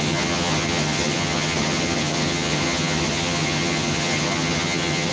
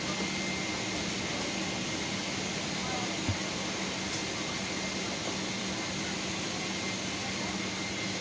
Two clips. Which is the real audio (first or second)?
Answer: second